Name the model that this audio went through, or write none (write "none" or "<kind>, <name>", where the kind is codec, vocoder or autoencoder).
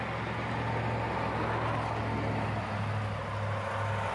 none